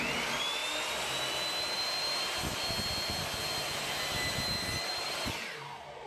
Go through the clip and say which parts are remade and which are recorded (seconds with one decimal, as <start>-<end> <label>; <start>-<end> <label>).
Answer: 0.0-6.1 recorded